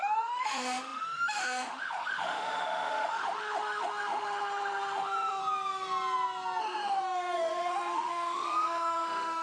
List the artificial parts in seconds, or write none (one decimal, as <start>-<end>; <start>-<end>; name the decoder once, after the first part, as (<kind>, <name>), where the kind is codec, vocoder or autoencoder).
0.0-5.4 (autoencoder, DAC-VAE); 6.6-9.4